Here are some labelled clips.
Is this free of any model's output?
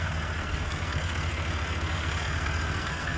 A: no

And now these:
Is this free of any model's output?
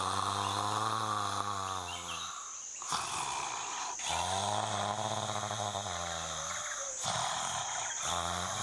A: yes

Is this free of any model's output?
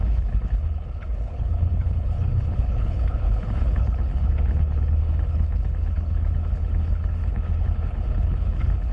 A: no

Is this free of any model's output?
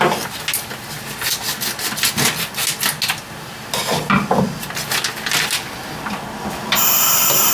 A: yes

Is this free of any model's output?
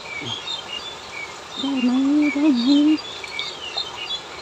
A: yes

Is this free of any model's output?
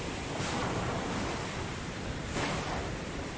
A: no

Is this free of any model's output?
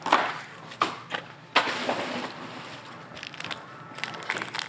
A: yes